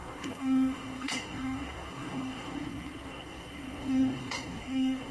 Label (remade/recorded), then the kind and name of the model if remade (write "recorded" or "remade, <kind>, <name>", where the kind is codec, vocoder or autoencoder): remade, codec, SNAC